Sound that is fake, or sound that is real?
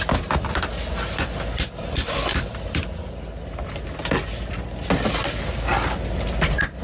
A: real